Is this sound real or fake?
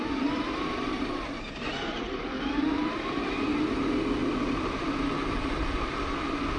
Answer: fake